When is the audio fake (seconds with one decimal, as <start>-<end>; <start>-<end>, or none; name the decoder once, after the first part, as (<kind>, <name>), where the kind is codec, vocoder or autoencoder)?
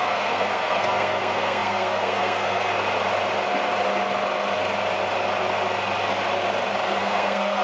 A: 0.0-2.7 (codec, SNAC); 7.0-7.6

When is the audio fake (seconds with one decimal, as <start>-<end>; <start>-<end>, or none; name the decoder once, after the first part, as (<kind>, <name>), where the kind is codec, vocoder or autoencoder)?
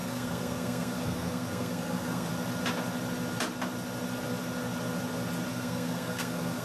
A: 0.0-2.3 (codec, SNAC); 5.5-6.6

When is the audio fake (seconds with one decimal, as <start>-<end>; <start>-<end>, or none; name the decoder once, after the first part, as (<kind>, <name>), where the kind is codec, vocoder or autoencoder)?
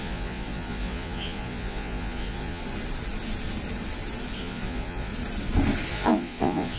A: 0.0-2.6 (vocoder, Vocos); 4.4-5.1; 5.9-6.8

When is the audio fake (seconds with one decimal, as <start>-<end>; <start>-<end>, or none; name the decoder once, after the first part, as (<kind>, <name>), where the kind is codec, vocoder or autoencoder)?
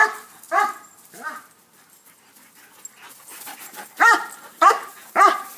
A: 3.4-5.6 (vocoder, BigVGAN v2)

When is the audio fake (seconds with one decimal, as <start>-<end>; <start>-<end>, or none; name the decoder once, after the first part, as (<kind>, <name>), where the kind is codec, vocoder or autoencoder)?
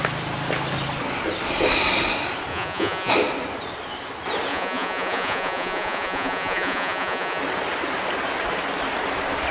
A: 2.5-3.1 (vocoder, Vocos); 4.5-7.4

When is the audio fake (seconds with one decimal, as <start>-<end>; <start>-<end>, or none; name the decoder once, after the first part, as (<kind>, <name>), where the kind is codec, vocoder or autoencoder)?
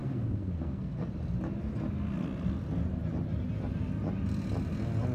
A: 0.0-1.1 (codec, SNAC)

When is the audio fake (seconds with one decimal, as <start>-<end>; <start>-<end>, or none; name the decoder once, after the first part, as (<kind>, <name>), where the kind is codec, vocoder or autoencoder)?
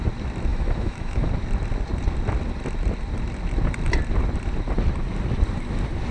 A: 0.5-1.3 (autoencoder, DAC-VAE)